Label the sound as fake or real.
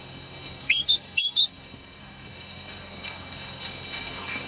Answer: fake